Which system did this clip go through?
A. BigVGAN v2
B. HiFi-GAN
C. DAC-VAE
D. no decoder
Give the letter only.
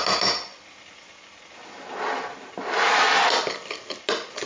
D